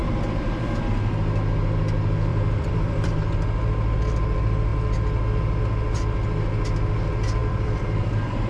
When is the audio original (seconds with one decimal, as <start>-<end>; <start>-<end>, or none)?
0.8-2.3; 3.1-7.4

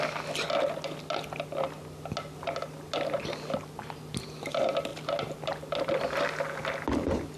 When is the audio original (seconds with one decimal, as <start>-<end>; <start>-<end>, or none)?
0.0-7.4

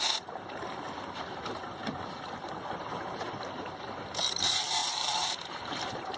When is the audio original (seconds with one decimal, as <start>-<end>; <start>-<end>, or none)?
none

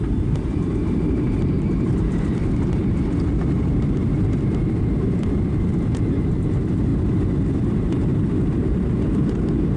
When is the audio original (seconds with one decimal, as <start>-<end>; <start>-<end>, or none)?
2.8-3.7; 6.9-7.6

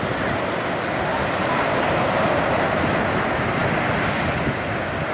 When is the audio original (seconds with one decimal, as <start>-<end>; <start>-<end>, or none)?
0.0-1.1; 3.2-5.1